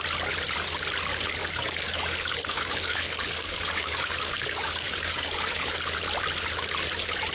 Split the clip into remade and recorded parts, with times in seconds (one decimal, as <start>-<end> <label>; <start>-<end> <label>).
0.0-1.4 recorded; 1.4-5.7 remade; 5.7-7.3 recorded